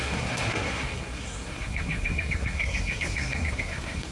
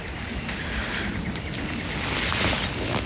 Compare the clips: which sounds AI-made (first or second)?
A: first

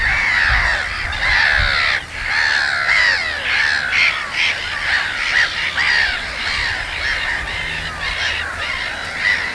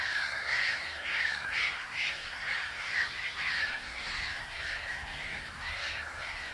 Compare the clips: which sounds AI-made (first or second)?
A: second